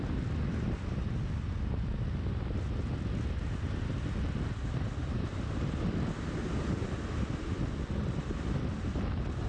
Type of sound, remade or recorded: recorded